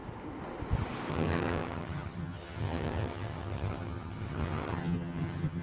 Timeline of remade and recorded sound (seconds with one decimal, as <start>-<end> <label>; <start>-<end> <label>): 0.0-1.1 recorded; 1.1-5.6 remade